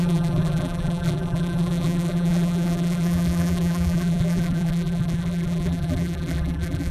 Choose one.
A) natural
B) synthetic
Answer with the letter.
B